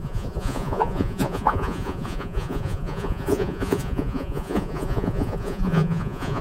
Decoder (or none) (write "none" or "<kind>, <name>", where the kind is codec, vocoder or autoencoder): vocoder, Vocos